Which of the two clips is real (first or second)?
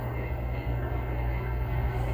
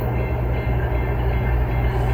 second